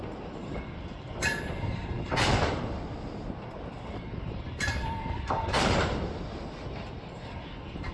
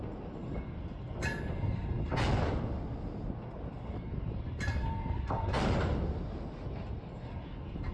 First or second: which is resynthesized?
first